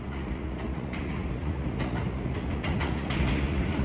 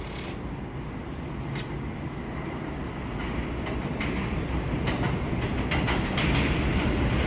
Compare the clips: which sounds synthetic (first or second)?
first